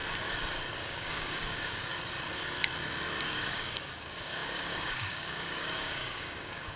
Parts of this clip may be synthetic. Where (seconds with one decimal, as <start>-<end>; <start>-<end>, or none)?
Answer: 0.8-1.9; 3.2-6.8